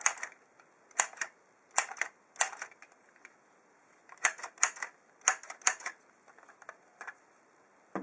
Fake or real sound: real